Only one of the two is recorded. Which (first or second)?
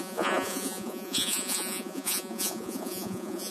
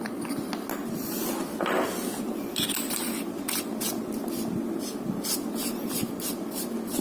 second